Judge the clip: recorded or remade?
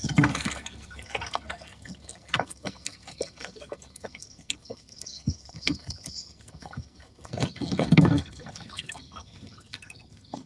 remade